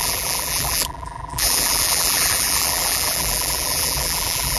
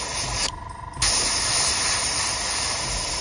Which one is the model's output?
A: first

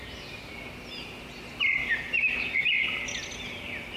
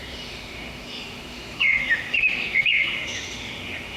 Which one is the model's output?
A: second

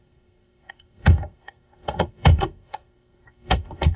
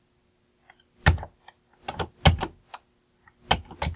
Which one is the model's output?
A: first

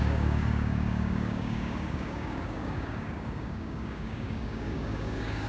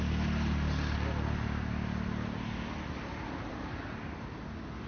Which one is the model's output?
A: first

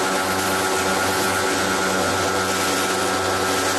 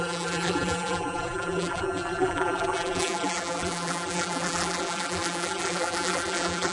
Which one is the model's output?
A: second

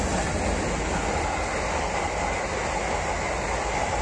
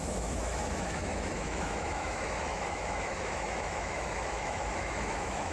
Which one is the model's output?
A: second